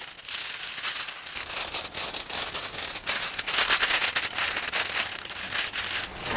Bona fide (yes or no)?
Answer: yes